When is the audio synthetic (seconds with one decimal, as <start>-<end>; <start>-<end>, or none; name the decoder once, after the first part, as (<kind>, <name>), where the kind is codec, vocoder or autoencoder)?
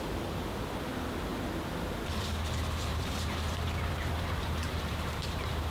2.9-5.7 (vocoder, BigVGAN v2)